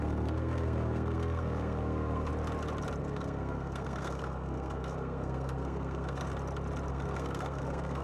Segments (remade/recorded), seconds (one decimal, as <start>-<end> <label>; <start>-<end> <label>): 0.0-2.3 remade; 2.3-3.0 recorded; 3.0-6.3 remade; 6.3-6.9 recorded; 6.9-8.0 remade